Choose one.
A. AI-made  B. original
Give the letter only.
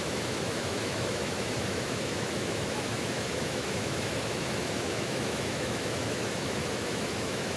A